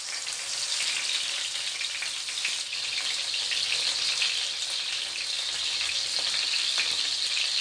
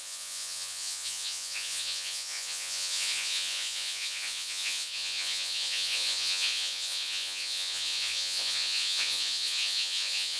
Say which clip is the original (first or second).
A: first